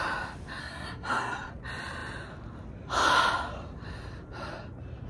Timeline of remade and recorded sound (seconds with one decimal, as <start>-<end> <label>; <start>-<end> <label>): 0.0-0.6 recorded; 0.6-1.5 remade; 1.5-5.1 recorded